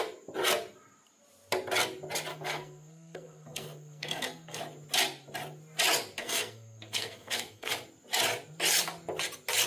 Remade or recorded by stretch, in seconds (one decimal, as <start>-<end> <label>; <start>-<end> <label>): 0.0-2.3 recorded; 2.3-4.6 remade; 4.6-6.2 recorded; 6.2-7.7 remade; 7.7-9.7 recorded